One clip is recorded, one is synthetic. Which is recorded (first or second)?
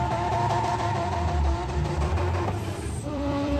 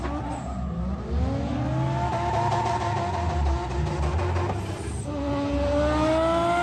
second